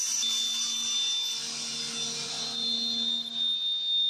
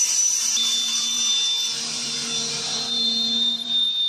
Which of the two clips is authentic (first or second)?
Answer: first